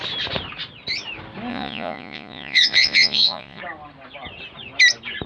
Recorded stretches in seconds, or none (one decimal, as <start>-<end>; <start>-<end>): 0.0-1.5; 3.6-5.3